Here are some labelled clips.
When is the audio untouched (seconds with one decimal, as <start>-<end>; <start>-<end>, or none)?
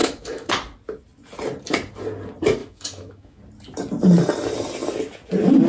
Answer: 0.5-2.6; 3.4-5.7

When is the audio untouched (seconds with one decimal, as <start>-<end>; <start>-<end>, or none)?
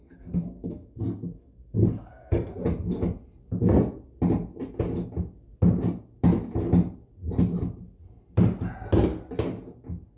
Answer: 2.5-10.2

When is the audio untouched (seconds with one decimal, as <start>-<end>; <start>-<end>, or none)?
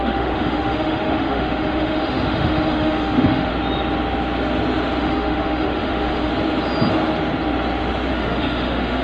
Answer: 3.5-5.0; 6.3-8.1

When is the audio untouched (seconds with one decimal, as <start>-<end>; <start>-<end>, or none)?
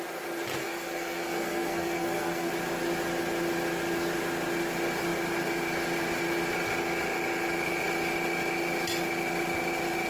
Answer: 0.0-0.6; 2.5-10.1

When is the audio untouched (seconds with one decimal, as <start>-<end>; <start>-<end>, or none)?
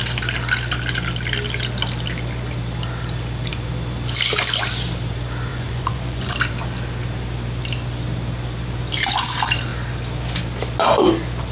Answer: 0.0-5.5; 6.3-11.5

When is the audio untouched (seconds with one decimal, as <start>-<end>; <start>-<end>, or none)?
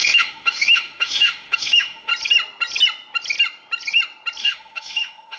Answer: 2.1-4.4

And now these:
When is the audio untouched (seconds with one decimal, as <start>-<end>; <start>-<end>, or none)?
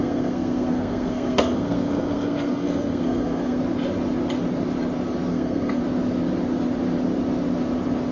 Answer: 3.6-5.3; 5.8-8.1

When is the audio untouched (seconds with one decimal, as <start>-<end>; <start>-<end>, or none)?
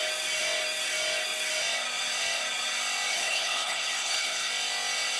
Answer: 0.0-3.1; 4.5-5.2